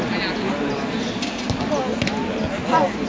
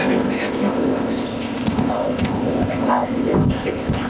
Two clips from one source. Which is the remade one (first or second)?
second